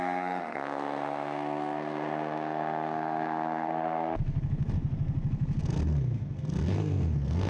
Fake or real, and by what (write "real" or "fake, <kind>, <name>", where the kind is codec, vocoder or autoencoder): fake, codec, SNAC